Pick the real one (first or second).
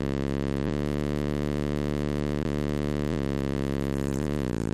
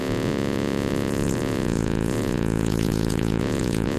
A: first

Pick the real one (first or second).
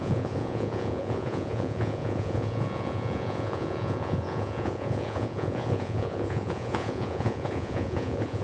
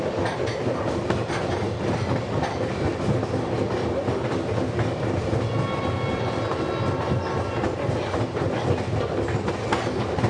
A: second